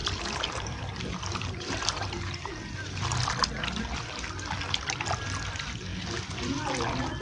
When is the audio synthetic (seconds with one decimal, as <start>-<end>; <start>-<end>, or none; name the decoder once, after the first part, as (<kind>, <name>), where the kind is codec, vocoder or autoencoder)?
0.0-2.5 (vocoder, BigVGAN v2)